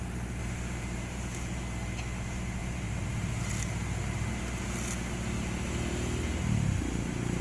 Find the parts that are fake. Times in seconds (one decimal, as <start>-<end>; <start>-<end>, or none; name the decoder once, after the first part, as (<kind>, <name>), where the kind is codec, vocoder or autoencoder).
0.4-1.6 (vocoder, BigVGAN v2); 2.6-3.4